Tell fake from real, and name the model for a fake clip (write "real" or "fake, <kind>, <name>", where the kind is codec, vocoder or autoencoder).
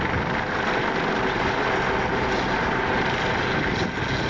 real